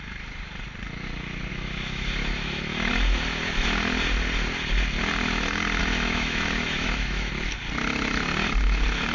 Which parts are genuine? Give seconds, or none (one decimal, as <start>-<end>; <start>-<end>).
0.0-1.5; 2.9-5.8; 7.3-9.1